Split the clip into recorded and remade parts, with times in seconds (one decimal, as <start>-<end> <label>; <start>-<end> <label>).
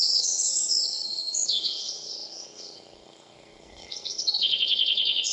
0.0-5.3 remade